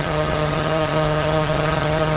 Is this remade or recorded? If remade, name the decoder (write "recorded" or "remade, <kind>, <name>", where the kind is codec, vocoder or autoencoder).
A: remade, vocoder, HiFi-GAN